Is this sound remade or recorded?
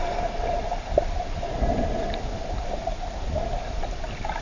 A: recorded